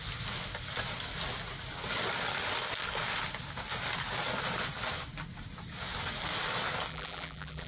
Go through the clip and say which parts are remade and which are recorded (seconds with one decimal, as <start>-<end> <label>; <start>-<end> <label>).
0.0-6.9 recorded; 6.9-7.7 remade